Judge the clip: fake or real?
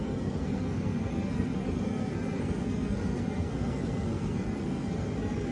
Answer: fake